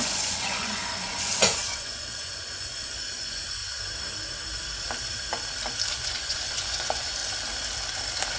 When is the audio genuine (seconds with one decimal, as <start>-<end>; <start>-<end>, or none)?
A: 3.6-5.9; 7.2-8.4